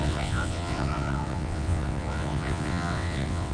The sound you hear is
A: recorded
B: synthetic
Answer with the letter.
B